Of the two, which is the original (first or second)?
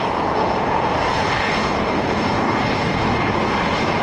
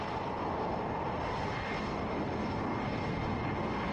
second